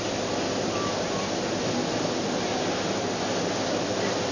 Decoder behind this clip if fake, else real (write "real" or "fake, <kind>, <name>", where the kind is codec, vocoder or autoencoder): real